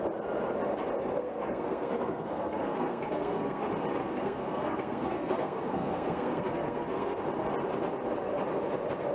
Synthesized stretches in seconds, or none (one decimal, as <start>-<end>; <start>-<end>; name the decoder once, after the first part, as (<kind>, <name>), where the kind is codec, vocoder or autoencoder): 1.2-3.6 (codec, SNAC); 4.0-7.2

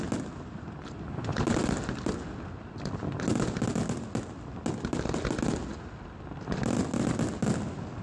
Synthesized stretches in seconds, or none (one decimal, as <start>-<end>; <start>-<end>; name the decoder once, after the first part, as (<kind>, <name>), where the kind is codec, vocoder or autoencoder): none

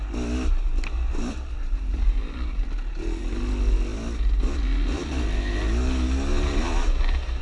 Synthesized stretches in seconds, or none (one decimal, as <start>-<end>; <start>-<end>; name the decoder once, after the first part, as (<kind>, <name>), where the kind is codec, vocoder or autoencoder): none

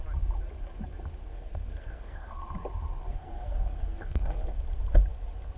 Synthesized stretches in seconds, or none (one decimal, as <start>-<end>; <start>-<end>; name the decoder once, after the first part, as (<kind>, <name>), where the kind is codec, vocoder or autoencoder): 1.3-2.4 (codec, SNAC); 3.1-4.6

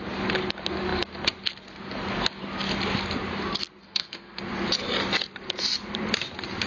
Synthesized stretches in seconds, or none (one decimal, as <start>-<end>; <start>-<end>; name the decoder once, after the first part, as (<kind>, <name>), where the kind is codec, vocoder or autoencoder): 3.8-4.4 (codec, SNAC)

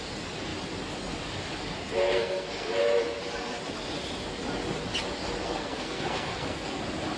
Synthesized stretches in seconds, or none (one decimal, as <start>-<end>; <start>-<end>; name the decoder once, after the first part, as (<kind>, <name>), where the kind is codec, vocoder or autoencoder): 2.0-2.8 (codec, SNAC); 5.4-6.8